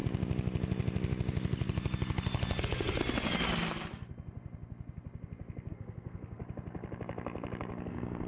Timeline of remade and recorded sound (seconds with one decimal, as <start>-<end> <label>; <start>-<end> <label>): 0.0-2.6 recorded; 2.6-3.0 remade; 3.0-5.7 recorded; 5.7-6.4 remade; 6.4-7.9 recorded; 7.9-8.3 remade